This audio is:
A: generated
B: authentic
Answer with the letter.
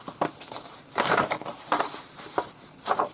A